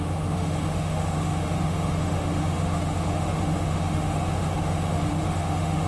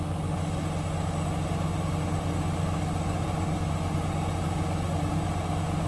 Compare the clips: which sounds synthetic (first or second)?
first